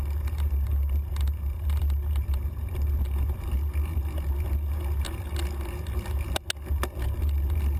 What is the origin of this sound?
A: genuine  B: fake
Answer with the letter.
A